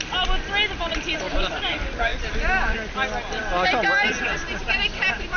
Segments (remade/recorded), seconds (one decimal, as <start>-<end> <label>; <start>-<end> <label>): 0.0-5.4 recorded